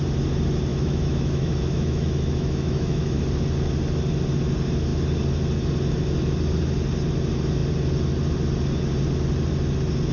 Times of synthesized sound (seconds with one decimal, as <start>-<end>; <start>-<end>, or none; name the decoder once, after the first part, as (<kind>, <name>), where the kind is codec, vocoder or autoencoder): 0.7-3.2 (autoencoder, DAC-VAE)